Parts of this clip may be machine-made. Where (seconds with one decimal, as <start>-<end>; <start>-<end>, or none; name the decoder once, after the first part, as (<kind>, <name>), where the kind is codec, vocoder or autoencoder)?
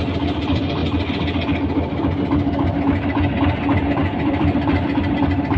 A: 0.0-0.8 (vocoder, BigVGAN v2); 3.4-5.6